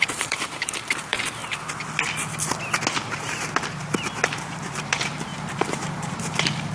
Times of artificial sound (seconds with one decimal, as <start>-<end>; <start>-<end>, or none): 0.0-1.4; 4.7-6.7